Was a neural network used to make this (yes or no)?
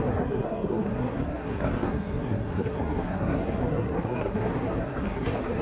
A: yes